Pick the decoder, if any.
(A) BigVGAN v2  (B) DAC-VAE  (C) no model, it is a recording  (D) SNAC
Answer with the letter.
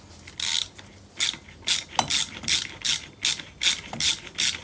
C